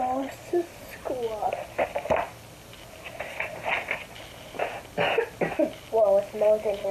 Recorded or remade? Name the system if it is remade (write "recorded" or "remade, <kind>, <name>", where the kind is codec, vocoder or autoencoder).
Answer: recorded